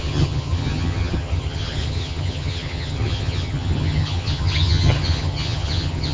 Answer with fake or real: fake